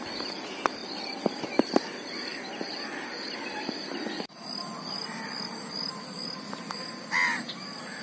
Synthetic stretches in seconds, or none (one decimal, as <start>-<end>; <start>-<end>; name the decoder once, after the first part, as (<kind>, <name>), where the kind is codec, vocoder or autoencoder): none